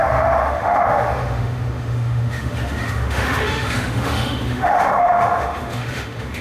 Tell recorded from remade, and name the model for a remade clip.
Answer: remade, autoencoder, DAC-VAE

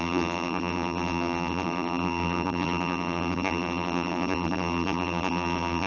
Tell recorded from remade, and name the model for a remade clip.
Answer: remade, vocoder, BigVGAN v2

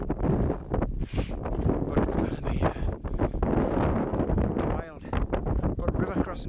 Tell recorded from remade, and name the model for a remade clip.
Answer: recorded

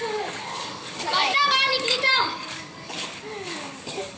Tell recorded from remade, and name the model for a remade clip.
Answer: remade, codec, DAC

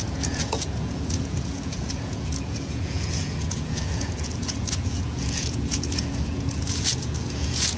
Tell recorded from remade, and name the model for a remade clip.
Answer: remade, vocoder, Vocos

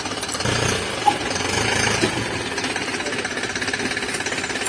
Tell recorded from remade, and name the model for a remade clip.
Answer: recorded